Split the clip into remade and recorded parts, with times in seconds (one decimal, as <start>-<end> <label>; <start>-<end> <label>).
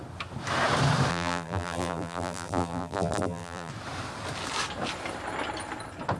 0.0-1.1 recorded; 1.1-3.7 remade; 3.7-6.2 recorded